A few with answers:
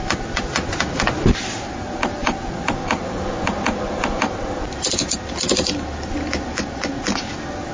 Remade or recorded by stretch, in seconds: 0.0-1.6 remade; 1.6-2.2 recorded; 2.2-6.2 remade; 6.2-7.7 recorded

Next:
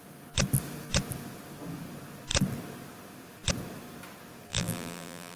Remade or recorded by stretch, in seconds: 0.0-4.5 recorded; 4.5-5.4 remade